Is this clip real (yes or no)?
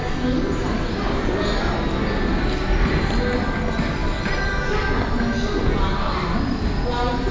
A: yes